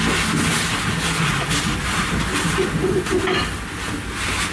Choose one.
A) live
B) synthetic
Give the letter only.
A